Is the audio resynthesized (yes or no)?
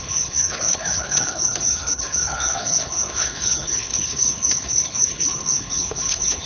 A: yes